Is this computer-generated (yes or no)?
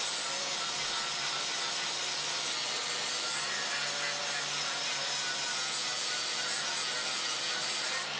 no